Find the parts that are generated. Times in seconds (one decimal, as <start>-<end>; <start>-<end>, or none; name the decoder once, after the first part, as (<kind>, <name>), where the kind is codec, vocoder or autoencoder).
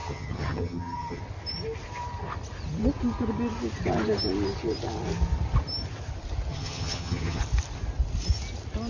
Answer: 0.0-1.2 (vocoder, HiFi-GAN); 6.5-7.4